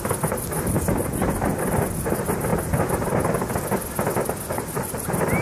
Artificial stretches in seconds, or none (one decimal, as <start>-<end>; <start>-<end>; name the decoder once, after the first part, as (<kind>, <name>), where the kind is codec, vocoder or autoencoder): none